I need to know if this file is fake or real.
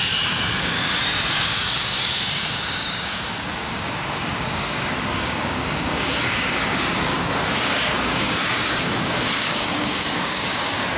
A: fake